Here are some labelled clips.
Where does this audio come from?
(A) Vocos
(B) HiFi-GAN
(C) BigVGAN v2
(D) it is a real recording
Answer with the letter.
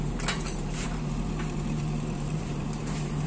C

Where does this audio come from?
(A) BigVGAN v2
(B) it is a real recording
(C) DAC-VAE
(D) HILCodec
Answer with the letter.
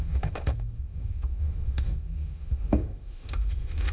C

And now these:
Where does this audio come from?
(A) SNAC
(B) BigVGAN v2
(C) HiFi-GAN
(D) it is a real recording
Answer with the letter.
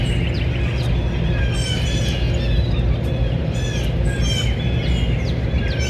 D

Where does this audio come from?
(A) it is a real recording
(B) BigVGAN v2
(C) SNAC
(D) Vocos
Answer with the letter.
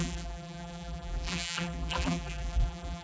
B